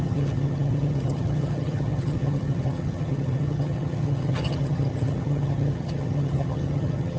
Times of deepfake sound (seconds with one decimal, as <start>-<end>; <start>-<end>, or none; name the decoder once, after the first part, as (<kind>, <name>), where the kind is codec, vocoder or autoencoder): 0.0-7.2 (vocoder, HiFi-GAN)